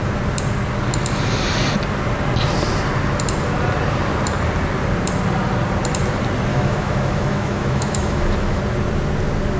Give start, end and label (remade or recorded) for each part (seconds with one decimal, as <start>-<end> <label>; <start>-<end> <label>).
0.0-6.5 recorded; 6.5-8.6 remade; 8.6-9.6 recorded